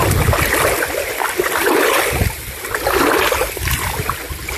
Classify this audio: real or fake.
real